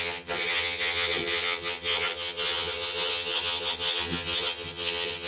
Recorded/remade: remade